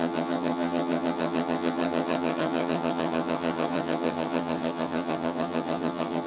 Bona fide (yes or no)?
no